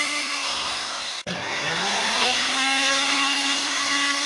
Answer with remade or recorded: remade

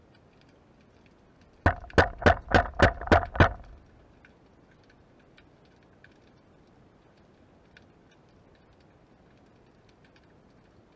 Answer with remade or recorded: recorded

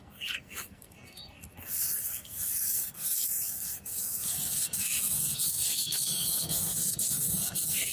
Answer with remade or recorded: remade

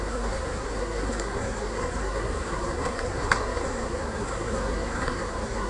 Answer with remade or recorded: remade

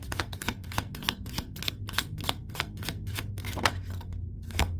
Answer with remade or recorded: remade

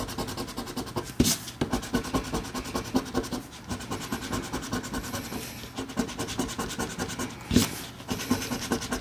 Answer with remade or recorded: recorded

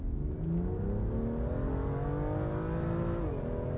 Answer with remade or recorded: recorded